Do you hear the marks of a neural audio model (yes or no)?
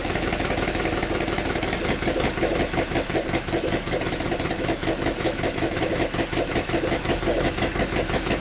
yes